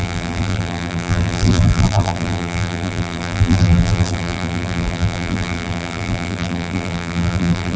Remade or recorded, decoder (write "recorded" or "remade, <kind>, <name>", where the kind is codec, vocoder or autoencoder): remade, vocoder, BigVGAN v2